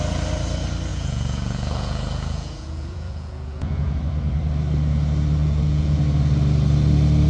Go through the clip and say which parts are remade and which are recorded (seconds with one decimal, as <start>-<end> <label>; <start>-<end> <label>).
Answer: 0.0-0.9 recorded; 0.9-4.0 remade; 4.0-5.4 recorded; 5.4-6.0 remade; 6.0-7.3 recorded